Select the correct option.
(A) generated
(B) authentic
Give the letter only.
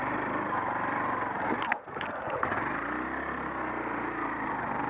B